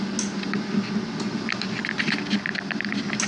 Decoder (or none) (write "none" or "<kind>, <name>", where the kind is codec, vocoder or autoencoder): none